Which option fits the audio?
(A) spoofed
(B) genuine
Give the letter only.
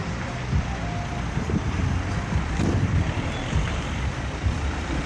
A